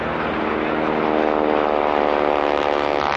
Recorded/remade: recorded